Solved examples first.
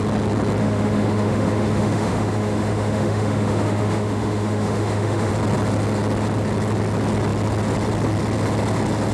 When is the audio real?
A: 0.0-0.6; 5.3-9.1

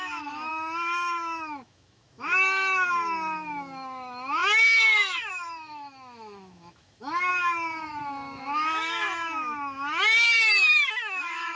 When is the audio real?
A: none

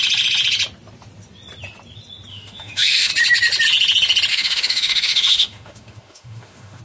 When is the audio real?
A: 0.0-2.3; 3.1-4.3

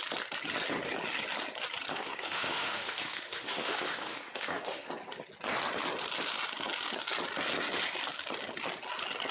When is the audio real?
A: 0.0-1.9; 4.9-9.3

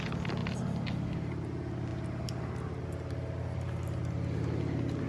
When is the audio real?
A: 0.0-5.1